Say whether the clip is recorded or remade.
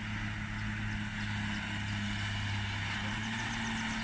recorded